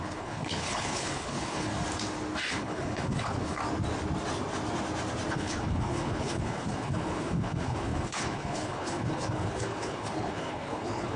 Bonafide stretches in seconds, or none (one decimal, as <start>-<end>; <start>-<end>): 1.7-2.5; 3.6-5.3